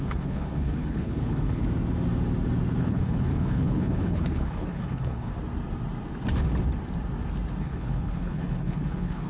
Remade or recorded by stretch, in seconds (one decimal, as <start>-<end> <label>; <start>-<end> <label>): 0.0-1.6 remade; 1.6-2.8 recorded; 2.8-5.3 remade; 5.3-7.6 recorded; 7.6-9.3 remade